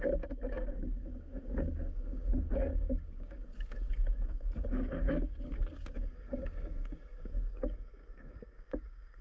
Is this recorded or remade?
remade